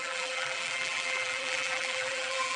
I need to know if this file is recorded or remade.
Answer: remade